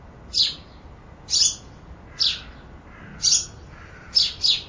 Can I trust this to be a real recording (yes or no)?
yes